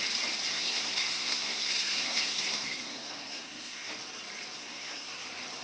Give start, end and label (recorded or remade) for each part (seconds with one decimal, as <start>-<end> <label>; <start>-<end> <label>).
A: 0.0-0.5 recorded; 0.5-3.9 remade; 3.9-4.6 recorded; 4.6-5.1 remade; 5.1-5.6 recorded